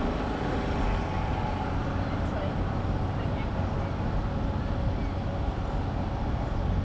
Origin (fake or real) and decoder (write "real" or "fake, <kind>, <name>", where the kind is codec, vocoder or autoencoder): real